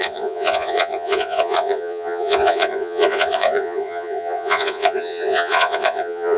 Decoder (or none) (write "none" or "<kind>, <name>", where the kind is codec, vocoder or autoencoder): vocoder, Vocos